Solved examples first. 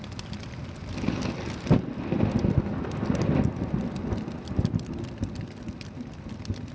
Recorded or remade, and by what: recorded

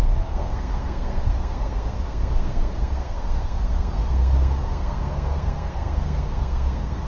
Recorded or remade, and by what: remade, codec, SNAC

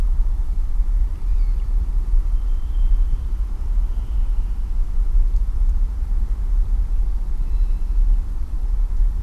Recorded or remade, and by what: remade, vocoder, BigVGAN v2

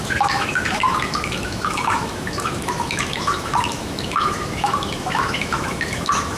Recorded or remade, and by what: remade, autoencoder, DAC-VAE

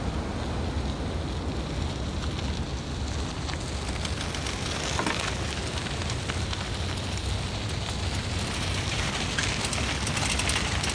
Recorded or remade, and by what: recorded